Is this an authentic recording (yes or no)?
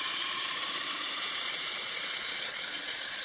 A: no